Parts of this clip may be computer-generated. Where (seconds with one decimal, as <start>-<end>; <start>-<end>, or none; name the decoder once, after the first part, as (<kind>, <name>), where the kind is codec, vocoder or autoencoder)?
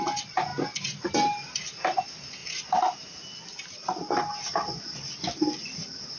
none